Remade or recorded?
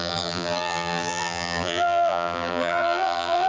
remade